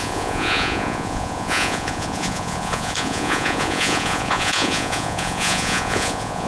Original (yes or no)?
no